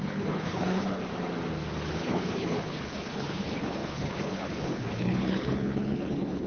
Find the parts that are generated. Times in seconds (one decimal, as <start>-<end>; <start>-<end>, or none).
0.0-1.0; 1.9-6.5